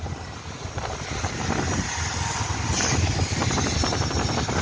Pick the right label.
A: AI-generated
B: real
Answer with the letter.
B